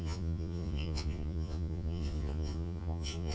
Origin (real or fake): fake